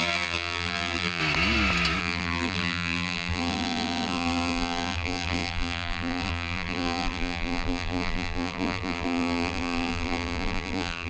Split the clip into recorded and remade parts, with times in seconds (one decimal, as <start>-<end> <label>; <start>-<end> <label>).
0.0-1.2 remade; 1.2-2.0 recorded; 2.0-11.1 remade